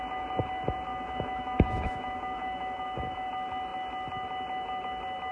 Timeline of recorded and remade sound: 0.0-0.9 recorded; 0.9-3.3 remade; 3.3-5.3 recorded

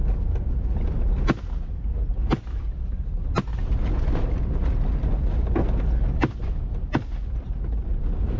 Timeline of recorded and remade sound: 0.0-8.4 recorded

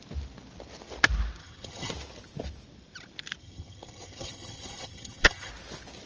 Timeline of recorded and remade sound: 0.0-1.4 recorded; 1.4-1.9 remade; 1.9-3.4 recorded; 3.4-5.5 remade; 5.5-6.1 recorded

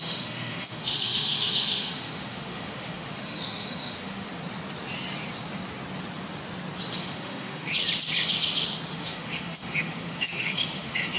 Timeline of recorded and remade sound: 0.0-4.3 remade; 4.3-7.0 recorded; 7.0-7.7 remade; 7.7-8.9 recorded; 8.9-11.2 remade

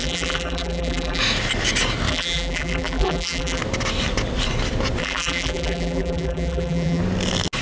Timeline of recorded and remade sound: 0.0-1.2 remade; 1.2-2.1 recorded; 2.1-3.6 remade; 3.6-5.0 recorded; 5.0-7.0 remade; 7.0-7.6 recorded

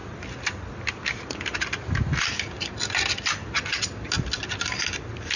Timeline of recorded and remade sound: 0.0-5.4 recorded

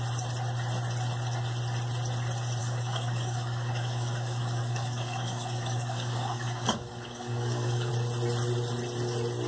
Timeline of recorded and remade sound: 0.0-2.6 recorded; 2.6-7.9 remade; 7.9-9.5 recorded